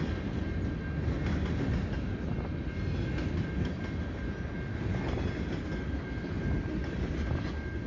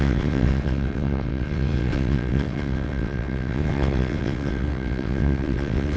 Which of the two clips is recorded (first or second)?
first